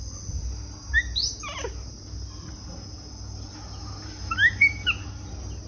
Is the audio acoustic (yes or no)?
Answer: yes